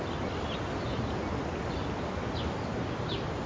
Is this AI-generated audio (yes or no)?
no